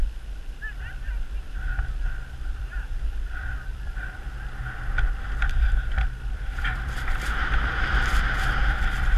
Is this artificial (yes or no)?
yes